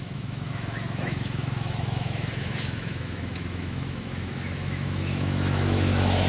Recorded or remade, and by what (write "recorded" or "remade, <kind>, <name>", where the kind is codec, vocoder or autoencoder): remade, autoencoder, DAC-VAE